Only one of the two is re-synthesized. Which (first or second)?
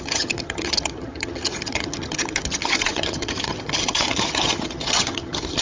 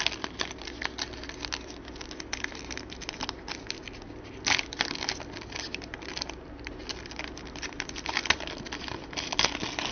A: first